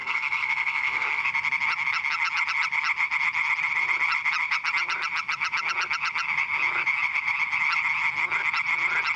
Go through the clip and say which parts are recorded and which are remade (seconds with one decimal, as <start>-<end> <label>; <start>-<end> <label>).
0.0-1.2 remade; 1.2-9.2 recorded